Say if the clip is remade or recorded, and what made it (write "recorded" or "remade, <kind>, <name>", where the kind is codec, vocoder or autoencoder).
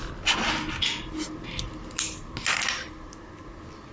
recorded